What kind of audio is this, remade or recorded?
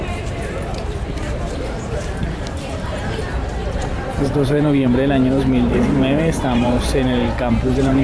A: remade